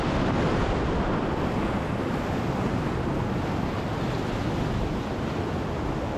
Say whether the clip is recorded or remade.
recorded